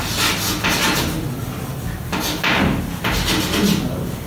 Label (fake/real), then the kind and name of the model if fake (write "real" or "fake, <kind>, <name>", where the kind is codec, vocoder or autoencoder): real